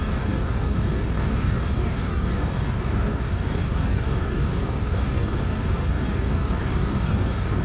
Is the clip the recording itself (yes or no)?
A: no